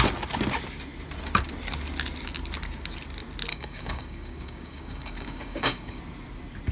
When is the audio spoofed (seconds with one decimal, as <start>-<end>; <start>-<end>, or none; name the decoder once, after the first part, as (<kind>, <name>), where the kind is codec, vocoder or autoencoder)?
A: 3.5-6.0 (codec, DAC)